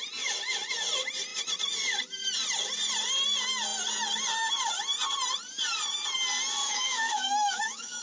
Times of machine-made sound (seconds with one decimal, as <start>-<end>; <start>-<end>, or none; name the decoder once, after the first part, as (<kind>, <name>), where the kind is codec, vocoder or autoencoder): 6.6-8.0 (autoencoder, DAC-VAE)